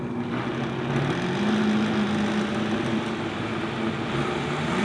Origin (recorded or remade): recorded